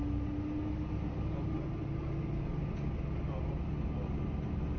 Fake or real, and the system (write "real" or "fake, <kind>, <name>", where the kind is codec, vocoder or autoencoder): real